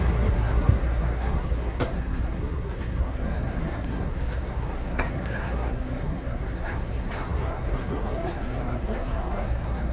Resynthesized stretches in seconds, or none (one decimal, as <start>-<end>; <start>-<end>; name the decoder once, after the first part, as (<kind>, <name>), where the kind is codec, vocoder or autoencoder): 0.0-9.9 (codec, SNAC)